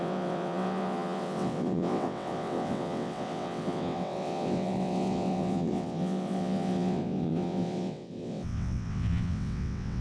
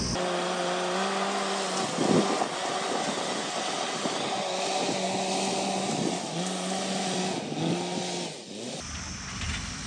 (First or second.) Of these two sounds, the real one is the second